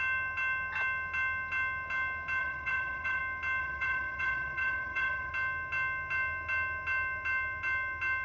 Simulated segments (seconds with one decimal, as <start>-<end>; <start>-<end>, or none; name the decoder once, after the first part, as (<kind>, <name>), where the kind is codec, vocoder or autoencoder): 2.4-3.2 (vocoder, WaveNeXt); 3.6-5.3